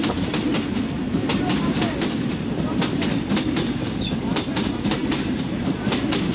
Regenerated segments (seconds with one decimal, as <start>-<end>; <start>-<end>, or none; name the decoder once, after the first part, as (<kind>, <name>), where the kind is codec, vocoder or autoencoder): 0.0-0.5 (vocoder, BigVGAN v2); 4.3-6.3